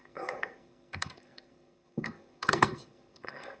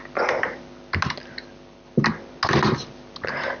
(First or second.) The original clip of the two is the second